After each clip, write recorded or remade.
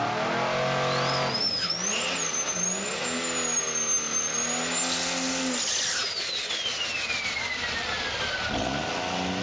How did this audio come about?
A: recorded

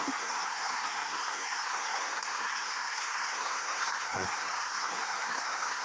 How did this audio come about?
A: remade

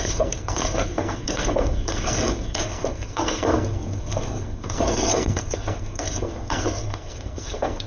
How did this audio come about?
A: remade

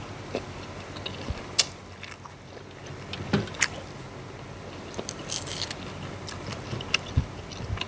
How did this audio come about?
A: recorded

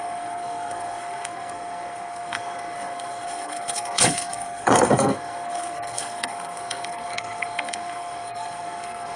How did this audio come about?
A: remade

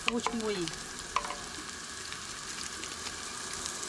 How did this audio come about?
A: recorded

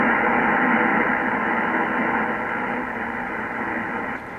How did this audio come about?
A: recorded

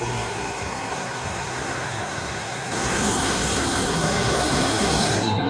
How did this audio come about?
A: remade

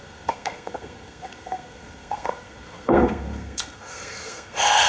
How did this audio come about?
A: remade